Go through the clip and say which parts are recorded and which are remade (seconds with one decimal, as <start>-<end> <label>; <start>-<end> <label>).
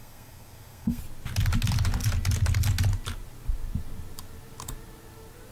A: 0.0-1.0 remade; 1.0-5.5 recorded